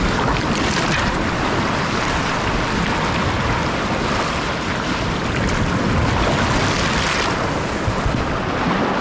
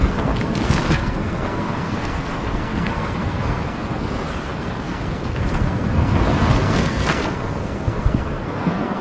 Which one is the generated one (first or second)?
second